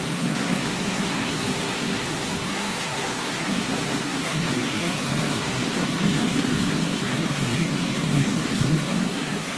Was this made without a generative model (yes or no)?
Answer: no